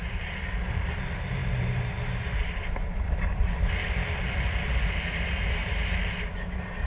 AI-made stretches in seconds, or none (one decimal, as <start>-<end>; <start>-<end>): none